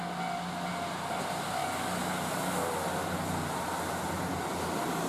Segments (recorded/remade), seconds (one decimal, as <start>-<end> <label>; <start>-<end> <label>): 0.0-5.1 recorded